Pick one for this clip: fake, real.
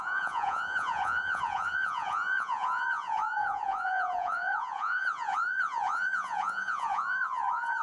fake